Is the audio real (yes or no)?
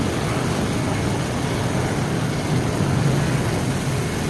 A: yes